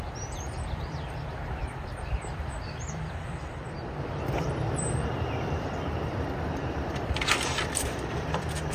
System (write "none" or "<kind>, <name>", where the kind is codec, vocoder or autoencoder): vocoder, BigVGAN v2